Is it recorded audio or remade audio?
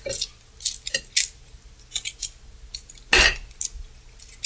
recorded